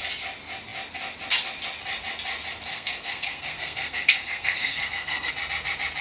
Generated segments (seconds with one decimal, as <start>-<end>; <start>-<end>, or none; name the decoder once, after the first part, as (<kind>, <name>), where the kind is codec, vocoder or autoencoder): 2.7-5.3 (codec, SNAC)